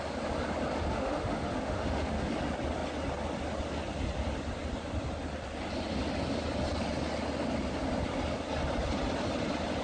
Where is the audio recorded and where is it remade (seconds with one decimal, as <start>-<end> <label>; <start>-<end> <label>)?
0.0-0.9 recorded; 0.9-2.3 remade; 2.3-9.8 recorded